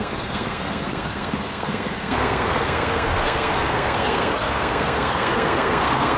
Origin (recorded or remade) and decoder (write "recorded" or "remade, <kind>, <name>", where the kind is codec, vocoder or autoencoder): remade, codec, SNAC